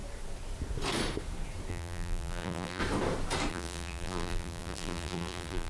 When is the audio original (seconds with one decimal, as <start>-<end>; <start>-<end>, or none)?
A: 0.0-1.7; 2.8-3.5

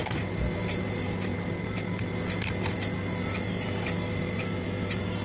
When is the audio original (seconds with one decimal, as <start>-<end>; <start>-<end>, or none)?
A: none

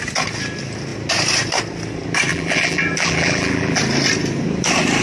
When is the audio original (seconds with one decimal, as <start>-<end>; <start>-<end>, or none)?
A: 0.0-2.3; 3.8-5.0

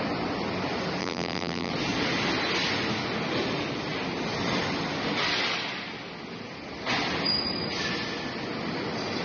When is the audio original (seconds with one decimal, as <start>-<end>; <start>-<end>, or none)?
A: 0.0-1.0; 1.7-9.2